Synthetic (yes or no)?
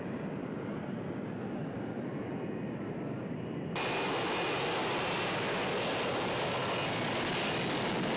no